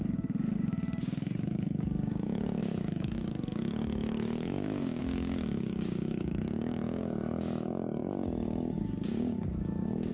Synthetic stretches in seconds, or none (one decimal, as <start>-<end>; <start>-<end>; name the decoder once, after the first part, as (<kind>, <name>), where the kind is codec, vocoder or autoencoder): 0.0-10.1 (codec, DAC)